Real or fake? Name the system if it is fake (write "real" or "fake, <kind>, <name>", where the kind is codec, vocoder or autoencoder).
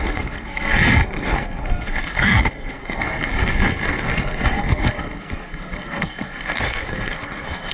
fake, codec, SNAC